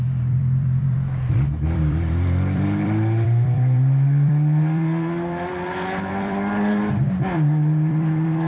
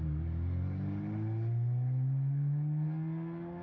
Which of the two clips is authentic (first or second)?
second